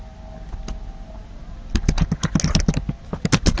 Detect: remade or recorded recorded